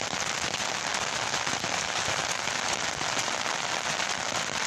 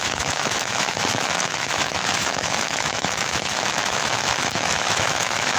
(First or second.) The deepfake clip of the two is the second